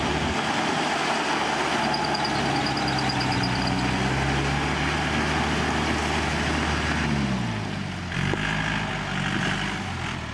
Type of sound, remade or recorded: recorded